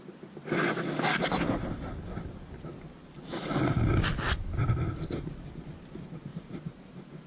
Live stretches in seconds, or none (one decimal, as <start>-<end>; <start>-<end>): 0.0-6.3

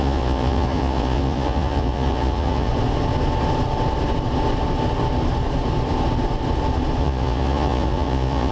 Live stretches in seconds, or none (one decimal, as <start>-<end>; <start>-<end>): 2.7-7.0

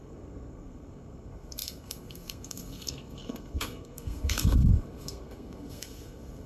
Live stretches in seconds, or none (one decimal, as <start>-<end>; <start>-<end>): none

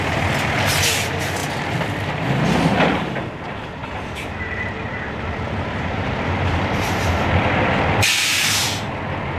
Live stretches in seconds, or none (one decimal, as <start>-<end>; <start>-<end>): 0.0-3.8; 8.8-9.4

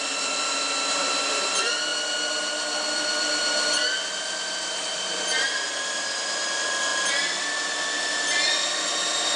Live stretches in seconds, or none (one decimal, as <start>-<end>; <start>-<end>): 0.0-9.4

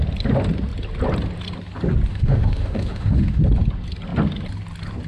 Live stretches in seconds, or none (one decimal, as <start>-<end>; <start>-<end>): 0.0-2.1; 3.4-5.1